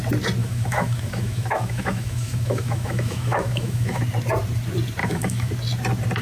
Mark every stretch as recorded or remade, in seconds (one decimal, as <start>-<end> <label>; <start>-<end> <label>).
0.0-0.4 recorded; 0.4-4.0 remade; 4.0-5.0 recorded; 5.0-5.5 remade; 5.5-6.2 recorded